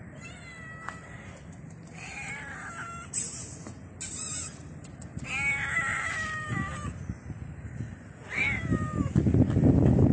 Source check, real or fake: real